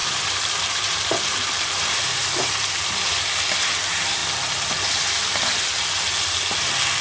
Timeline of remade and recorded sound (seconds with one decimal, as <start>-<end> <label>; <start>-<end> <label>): 0.0-2.9 remade; 2.9-7.0 recorded

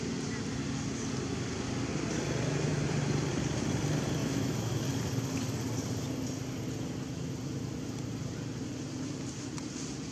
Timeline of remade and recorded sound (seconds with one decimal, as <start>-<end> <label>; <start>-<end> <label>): 0.0-4.2 recorded; 4.2-4.8 remade; 4.8-10.1 recorded

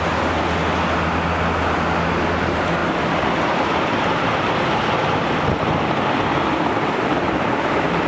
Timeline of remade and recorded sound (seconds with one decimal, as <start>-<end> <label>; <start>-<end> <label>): 0.0-2.8 recorded; 2.8-7.5 remade; 7.5-8.1 recorded

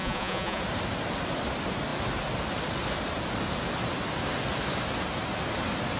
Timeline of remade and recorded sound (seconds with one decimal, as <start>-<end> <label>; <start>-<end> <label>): 0.0-0.6 remade; 0.6-6.0 recorded

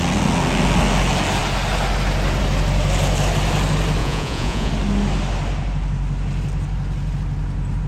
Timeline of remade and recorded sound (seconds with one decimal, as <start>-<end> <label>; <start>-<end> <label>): 0.0-4.0 recorded; 4.0-4.7 remade; 4.7-7.9 recorded